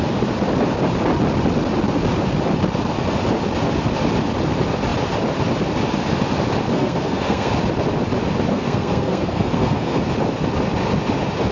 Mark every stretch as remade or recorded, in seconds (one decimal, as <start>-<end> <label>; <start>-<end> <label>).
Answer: 0.0-6.7 recorded; 6.7-7.5 remade; 7.5-8.5 recorded; 8.5-10.0 remade; 10.0-11.5 recorded